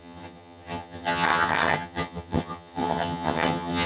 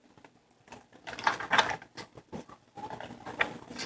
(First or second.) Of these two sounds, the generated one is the first